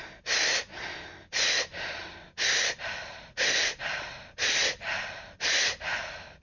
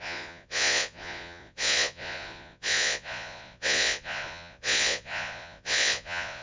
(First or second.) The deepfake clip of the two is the second